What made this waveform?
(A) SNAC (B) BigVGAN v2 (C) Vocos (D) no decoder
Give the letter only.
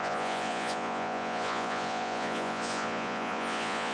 C